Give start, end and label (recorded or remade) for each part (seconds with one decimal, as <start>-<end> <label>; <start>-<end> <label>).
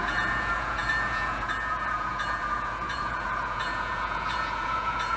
0.0-5.2 remade